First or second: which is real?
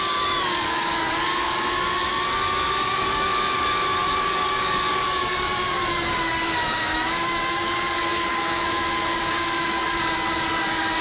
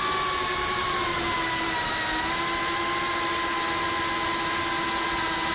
second